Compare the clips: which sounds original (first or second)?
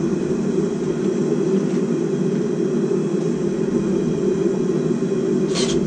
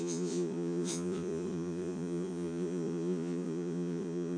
first